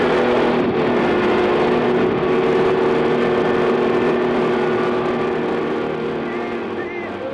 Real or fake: real